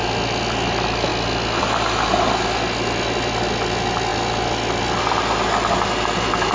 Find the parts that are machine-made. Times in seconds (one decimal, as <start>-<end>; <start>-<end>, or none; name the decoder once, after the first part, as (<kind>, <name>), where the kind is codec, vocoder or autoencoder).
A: none